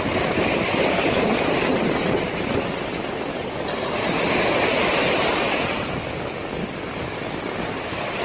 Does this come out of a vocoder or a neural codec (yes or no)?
no